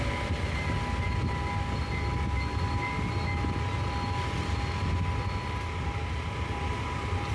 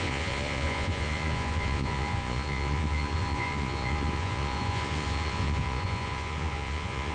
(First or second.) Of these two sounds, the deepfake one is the second